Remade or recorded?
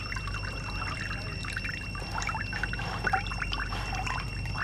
recorded